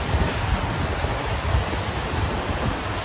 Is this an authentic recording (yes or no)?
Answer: yes